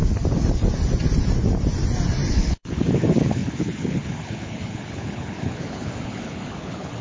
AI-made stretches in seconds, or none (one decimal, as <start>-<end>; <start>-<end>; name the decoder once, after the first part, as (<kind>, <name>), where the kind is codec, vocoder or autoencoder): 2.3-7.0 (codec, HILCodec)